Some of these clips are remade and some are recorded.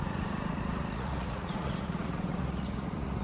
remade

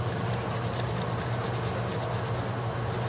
recorded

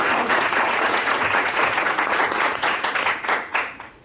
remade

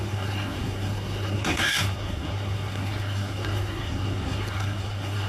remade